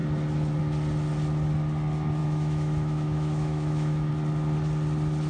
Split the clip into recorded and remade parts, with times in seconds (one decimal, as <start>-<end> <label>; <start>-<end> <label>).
0.0-2.2 recorded; 2.2-4.1 remade; 4.1-5.3 recorded